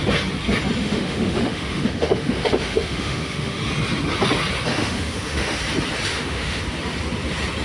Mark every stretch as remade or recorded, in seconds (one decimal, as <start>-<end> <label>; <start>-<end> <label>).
0.0-0.8 recorded; 0.8-3.7 remade; 3.7-4.7 recorded; 4.7-5.6 remade; 5.6-6.1 recorded; 6.1-6.6 remade; 6.6-7.6 recorded